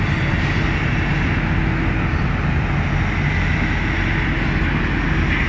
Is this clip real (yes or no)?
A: yes